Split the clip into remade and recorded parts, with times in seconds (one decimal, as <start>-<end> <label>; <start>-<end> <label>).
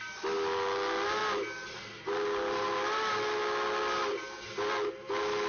0.0-5.5 recorded